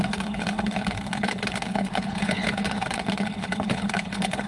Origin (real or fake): fake